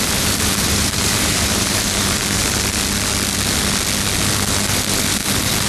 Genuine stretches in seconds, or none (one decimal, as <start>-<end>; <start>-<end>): 2.4-4.7